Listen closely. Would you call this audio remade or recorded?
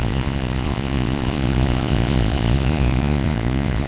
remade